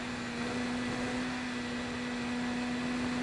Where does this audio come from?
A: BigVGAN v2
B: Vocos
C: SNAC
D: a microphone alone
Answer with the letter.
D